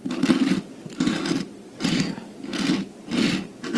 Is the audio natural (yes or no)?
yes